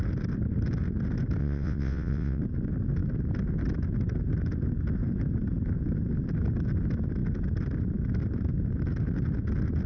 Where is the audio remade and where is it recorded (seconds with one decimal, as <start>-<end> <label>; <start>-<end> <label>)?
0.0-1.4 recorded; 1.4-2.4 remade; 2.4-9.9 recorded